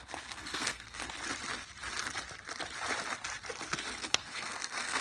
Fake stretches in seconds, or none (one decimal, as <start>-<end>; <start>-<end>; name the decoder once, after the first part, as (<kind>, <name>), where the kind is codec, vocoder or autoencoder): 0.0-1.0 (codec, SNAC); 4.0-5.0